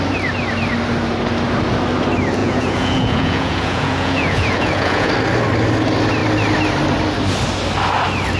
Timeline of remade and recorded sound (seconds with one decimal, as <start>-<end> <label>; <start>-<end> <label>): 0.0-2.4 recorded; 2.4-5.1 remade; 5.1-8.4 recorded